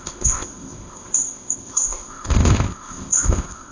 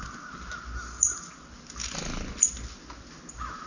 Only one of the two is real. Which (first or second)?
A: second